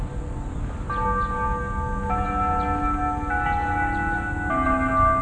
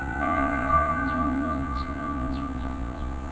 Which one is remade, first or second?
second